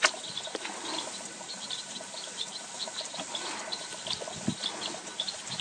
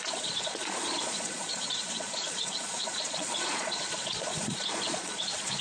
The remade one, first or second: second